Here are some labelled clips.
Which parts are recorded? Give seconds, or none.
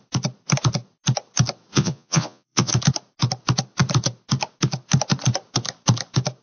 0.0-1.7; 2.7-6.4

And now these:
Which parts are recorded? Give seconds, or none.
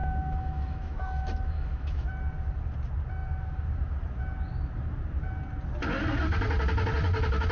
2.1-7.5